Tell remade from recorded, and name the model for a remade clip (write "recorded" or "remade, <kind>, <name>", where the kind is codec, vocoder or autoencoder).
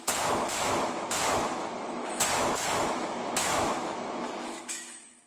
remade, autoencoder, DAC-VAE